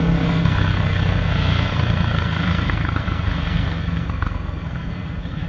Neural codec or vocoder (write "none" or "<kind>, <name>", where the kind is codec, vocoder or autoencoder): codec, SNAC